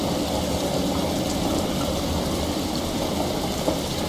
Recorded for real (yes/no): yes